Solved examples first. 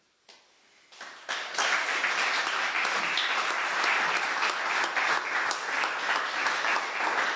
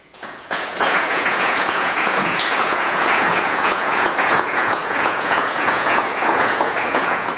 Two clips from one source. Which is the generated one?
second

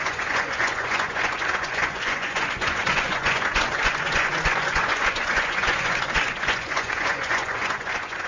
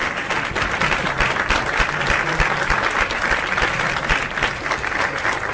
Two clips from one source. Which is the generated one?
first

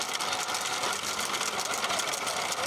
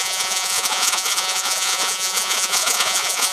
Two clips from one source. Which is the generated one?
second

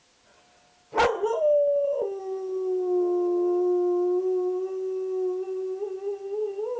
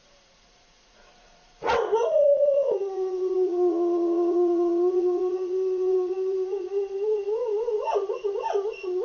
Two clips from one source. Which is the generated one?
second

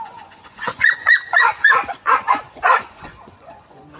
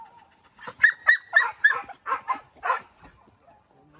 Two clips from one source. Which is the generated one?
first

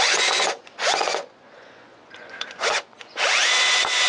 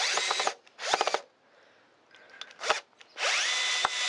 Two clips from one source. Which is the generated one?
first